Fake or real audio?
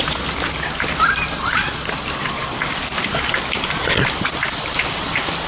fake